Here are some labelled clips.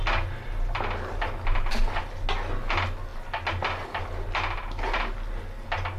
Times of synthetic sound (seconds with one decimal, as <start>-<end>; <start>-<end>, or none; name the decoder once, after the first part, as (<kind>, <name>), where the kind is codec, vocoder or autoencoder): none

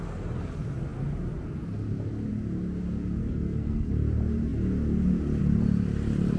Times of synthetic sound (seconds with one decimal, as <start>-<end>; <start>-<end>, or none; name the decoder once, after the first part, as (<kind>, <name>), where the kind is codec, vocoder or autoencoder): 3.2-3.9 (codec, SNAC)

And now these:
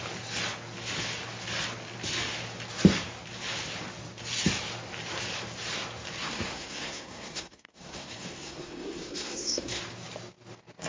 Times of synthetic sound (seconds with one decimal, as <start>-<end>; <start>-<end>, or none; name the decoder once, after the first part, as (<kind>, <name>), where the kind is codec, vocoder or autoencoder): 6.2-9.8 (codec, SNAC)

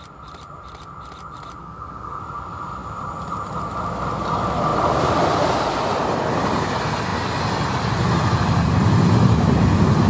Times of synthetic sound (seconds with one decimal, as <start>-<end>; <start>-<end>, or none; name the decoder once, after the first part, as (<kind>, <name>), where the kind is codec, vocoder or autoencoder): 1.6-2.2 (codec, SNAC)